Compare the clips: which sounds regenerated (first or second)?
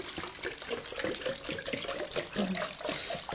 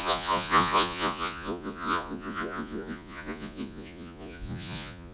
second